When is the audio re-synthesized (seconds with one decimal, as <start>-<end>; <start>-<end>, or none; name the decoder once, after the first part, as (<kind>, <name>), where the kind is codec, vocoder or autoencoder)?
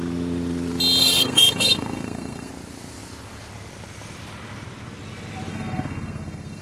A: 1.0-2.5 (codec, SNAC); 5.5-6.6